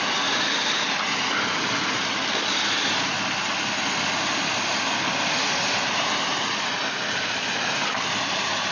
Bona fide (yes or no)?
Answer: yes